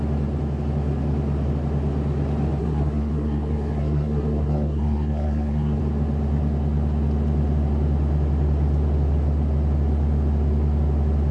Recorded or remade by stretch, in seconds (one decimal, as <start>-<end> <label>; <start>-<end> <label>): 0.0-2.6 recorded; 2.6-5.8 remade; 5.8-11.3 recorded